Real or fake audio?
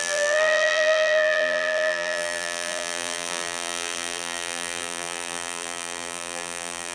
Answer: fake